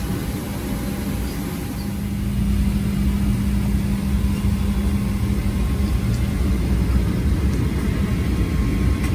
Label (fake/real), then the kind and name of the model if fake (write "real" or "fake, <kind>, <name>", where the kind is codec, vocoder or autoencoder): real